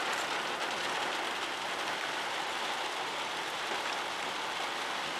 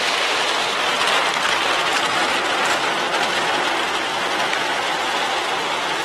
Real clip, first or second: first